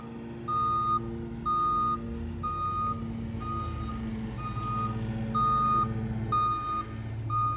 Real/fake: real